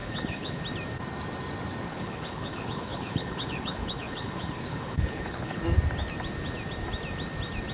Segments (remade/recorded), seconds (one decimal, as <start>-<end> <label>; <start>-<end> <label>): 0.0-0.6 remade; 0.6-1.9 recorded; 1.9-5.6 remade; 5.6-7.7 recorded